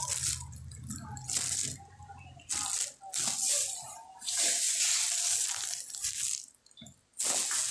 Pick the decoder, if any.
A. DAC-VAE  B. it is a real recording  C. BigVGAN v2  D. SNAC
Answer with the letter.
B